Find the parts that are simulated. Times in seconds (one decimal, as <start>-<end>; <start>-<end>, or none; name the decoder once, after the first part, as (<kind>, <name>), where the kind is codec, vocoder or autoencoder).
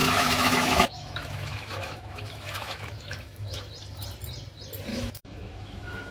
0.0-3.7 (autoencoder, DAC-VAE); 4.9-6.1